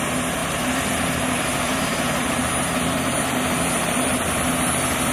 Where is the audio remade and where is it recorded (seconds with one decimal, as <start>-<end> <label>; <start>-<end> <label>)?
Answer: 0.0-0.4 recorded; 0.4-2.4 remade; 2.4-5.1 recorded